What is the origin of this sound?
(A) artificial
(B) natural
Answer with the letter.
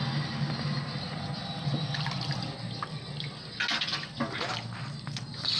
B